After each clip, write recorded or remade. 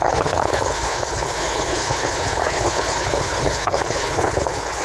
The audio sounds remade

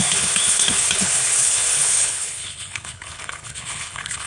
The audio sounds remade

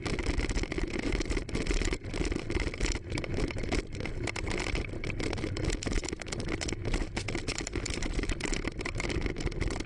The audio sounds recorded